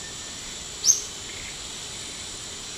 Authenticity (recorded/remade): recorded